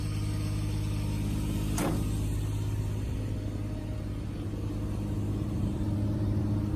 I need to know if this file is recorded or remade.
recorded